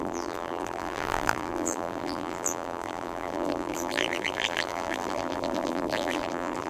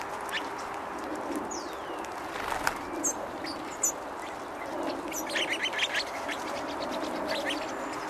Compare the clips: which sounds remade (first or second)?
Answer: first